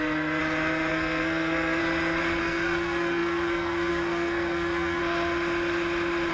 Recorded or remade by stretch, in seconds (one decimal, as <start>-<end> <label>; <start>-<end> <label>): 0.0-0.4 remade; 0.4-0.9 recorded; 0.9-1.8 remade; 1.8-2.4 recorded; 2.4-5.0 remade; 5.0-6.3 recorded

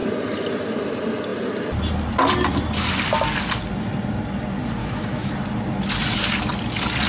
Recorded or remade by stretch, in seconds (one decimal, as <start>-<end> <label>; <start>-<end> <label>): 0.0-4.8 recorded; 4.8-5.3 remade; 5.3-7.1 recorded

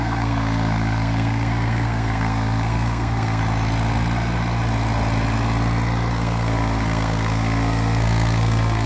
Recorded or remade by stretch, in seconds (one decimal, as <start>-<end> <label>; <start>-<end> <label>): 0.0-3.4 remade; 3.4-6.1 recorded; 6.1-8.9 remade